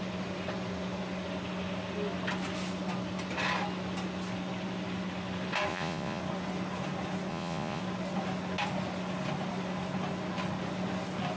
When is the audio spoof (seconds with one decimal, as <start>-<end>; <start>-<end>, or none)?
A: 5.7-6.2; 7.3-7.8

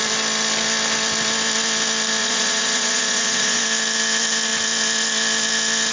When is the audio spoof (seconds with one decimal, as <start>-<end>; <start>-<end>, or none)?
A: 2.2-3.6

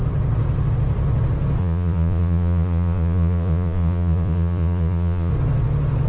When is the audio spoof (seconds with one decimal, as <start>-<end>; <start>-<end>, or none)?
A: 1.6-5.3

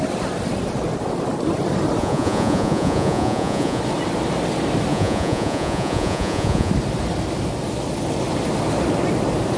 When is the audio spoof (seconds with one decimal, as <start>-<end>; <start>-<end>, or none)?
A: 2.0-3.8; 4.9-6.7